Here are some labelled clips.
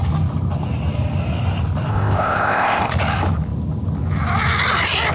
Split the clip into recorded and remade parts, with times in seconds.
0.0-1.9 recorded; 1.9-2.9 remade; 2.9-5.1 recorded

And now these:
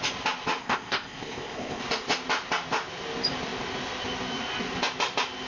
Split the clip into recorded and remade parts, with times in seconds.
0.0-0.6 recorded; 0.6-1.8 remade; 1.8-5.5 recorded

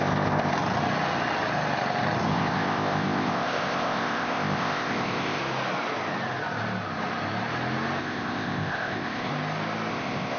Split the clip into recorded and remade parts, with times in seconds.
0.0-0.5 remade; 0.5-2.3 recorded; 2.3-5.4 remade; 5.4-8.0 recorded; 8.0-9.3 remade; 9.3-9.9 recorded; 9.9-10.4 remade

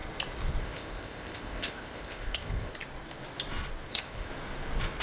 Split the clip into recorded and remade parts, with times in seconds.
0.0-0.6 recorded; 0.6-2.7 remade; 2.7-3.9 recorded; 3.9-4.3 remade; 4.3-5.0 recorded